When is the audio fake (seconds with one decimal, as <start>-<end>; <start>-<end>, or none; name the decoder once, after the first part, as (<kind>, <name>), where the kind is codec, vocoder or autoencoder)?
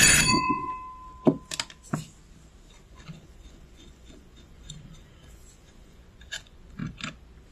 0.0-0.7 (vocoder, Vocos); 2.9-6.8